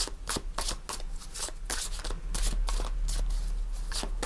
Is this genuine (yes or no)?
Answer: yes